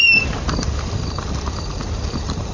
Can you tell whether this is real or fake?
real